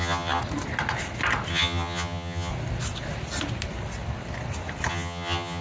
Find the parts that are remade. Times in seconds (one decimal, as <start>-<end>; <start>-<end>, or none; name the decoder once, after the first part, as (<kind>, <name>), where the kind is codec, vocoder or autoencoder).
0.0-0.4 (vocoder, HiFi-GAN); 1.5-2.5; 4.9-5.6